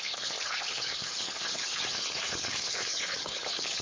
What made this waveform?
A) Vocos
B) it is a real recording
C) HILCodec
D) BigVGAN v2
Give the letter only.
C